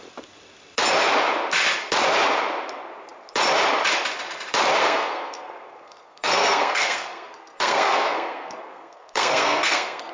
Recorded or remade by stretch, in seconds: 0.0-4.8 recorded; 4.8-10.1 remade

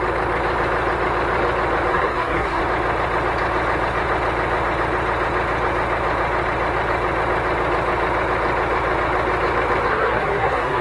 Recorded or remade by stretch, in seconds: 0.0-1.9 recorded; 1.9-2.6 remade; 2.6-9.9 recorded; 9.9-10.8 remade

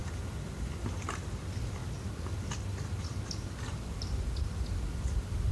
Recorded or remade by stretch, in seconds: 0.0-5.5 recorded

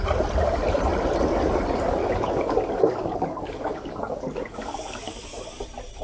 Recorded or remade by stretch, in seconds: 0.0-2.0 recorded; 2.0-5.6 remade; 5.6-6.0 recorded